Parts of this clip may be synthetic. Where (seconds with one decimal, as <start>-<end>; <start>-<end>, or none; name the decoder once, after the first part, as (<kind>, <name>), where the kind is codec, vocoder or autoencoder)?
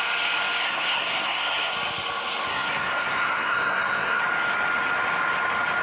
0.6-1.7 (codec, SNAC); 2.5-4.2